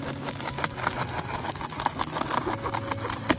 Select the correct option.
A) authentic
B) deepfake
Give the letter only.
A